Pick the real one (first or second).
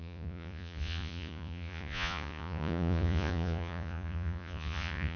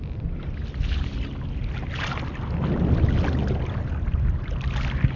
second